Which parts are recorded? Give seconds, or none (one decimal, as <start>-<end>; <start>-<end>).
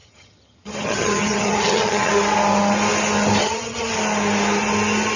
2.1-3.4; 3.9-5.2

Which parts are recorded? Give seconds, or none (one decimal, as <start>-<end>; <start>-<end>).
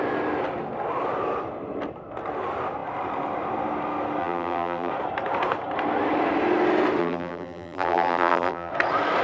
0.0-4.2; 4.9-7.0; 8.7-9.2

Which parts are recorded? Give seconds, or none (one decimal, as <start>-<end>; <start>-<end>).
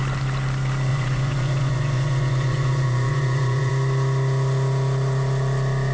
0.0-0.9; 3.7-5.9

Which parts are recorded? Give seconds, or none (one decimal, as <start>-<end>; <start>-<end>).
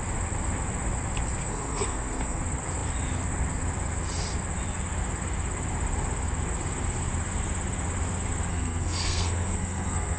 0.0-1.4; 2.4-8.5